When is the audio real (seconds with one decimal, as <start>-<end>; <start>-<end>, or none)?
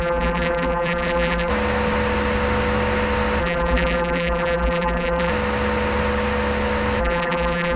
1.5-3.4; 5.3-7.0